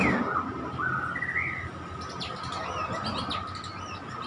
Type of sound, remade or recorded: recorded